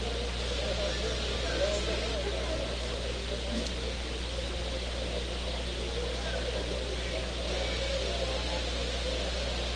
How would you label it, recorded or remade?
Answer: recorded